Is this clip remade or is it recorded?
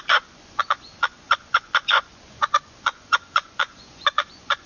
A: remade